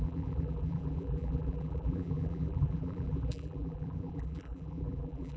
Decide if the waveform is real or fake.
fake